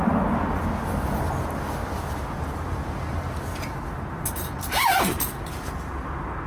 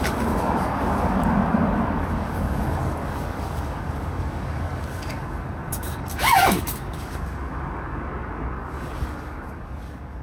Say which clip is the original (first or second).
first